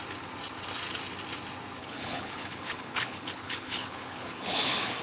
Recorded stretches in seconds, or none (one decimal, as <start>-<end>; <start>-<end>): 0.0-1.8